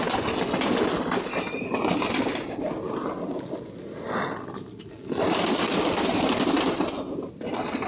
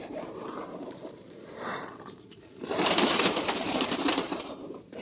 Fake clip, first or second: second